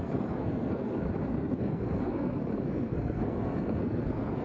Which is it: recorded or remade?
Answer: remade